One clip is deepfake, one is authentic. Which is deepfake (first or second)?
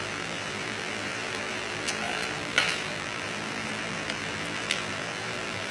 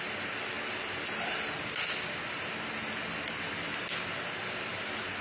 first